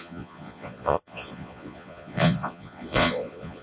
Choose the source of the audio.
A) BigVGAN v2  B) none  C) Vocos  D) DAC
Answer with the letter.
C